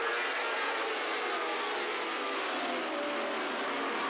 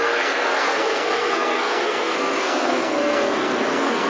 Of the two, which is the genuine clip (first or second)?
first